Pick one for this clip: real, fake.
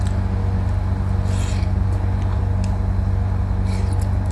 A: real